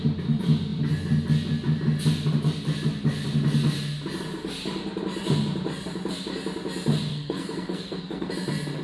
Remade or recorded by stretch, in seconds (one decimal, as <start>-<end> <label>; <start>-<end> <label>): 0.0-7.1 recorded; 7.1-8.3 remade; 8.3-8.8 recorded